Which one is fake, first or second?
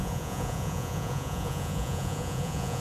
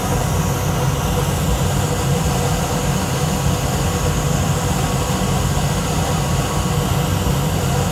first